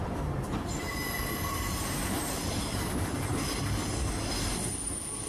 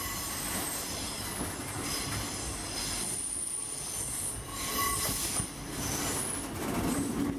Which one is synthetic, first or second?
first